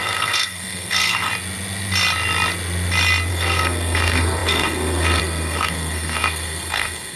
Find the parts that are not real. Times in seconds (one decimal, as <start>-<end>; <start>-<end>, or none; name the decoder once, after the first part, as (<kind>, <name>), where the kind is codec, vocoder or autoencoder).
0.0-1.3 (codec, SNAC); 3.3-7.2